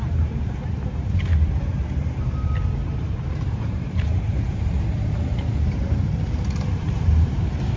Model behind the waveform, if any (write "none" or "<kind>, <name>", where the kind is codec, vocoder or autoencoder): vocoder, BigVGAN v2